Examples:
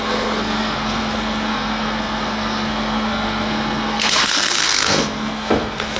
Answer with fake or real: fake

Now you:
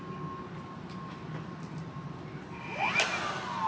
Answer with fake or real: real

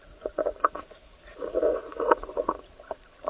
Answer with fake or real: fake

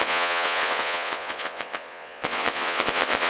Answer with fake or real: fake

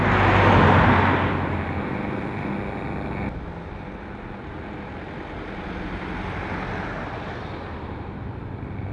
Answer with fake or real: real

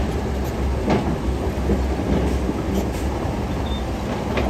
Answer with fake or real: real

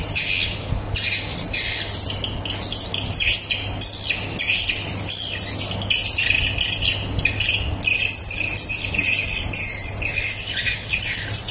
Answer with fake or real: real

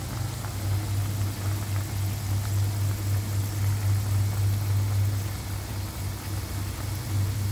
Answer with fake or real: real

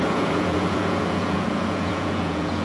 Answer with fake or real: fake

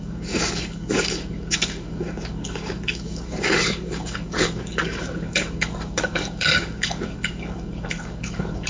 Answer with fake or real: fake